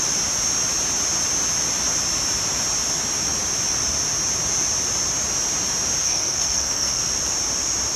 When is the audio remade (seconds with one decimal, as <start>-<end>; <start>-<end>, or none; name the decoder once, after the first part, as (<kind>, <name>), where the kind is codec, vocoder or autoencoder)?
6.0-7.0 (codec, SNAC)